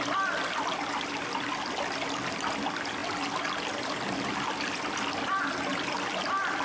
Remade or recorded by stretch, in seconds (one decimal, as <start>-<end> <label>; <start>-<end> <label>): 0.0-6.6 recorded